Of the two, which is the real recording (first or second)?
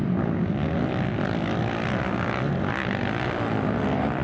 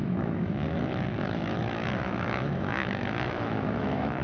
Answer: first